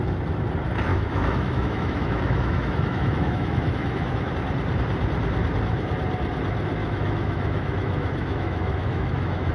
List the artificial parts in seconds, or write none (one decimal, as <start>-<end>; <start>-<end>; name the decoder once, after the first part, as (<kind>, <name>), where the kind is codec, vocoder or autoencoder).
0.9-4.3 (autoencoder, DAC-VAE); 6.8-9.5